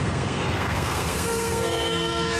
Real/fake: fake